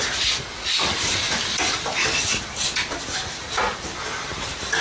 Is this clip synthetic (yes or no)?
no